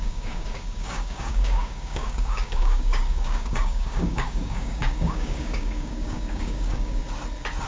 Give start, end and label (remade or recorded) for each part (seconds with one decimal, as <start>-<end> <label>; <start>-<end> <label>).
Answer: 0.0-7.0 remade; 7.0-7.7 recorded